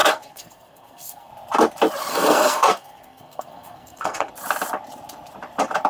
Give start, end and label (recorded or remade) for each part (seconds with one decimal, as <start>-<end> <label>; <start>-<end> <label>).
0.0-1.3 remade; 1.3-2.1 recorded; 2.1-4.3 remade; 4.3-5.9 recorded